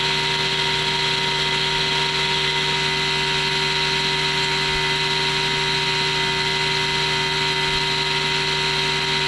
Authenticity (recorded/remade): recorded